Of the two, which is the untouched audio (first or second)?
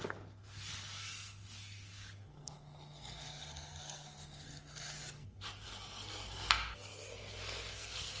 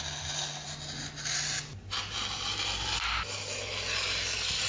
second